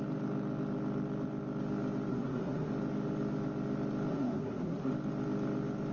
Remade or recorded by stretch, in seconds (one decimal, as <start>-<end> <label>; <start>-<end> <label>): 0.0-2.1 recorded; 2.1-2.7 remade; 2.7-4.1 recorded; 4.1-4.9 remade; 4.9-5.9 recorded